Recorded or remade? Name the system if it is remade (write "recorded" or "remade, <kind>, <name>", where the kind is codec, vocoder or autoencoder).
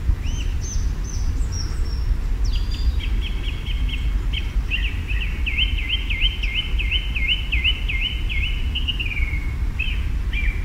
recorded